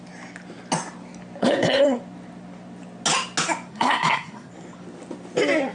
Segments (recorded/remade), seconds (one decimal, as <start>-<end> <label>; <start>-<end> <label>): 0.0-1.4 recorded; 1.4-2.0 remade; 2.0-3.7 recorded; 3.7-4.5 remade; 4.5-5.7 recorded